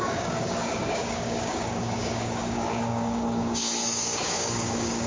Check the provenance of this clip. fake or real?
fake